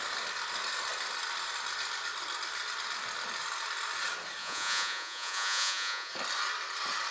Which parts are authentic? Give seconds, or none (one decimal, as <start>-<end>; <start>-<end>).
0.0-4.4; 6.1-7.1